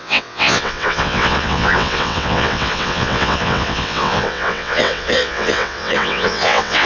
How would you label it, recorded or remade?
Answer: remade